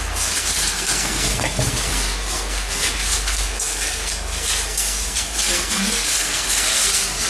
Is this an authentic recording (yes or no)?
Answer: no